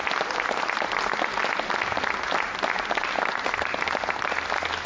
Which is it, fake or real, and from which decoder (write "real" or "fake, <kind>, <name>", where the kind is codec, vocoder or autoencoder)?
real